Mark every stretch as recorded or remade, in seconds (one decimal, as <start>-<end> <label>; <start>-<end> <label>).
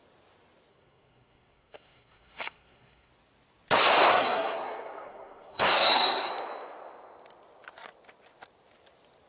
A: 0.0-0.7 recorded; 0.7-3.1 remade; 3.1-4.1 recorded; 4.1-6.3 remade; 6.3-9.3 recorded